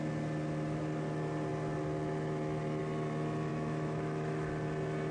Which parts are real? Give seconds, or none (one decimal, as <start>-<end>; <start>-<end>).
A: 0.0-3.5; 4.5-5.1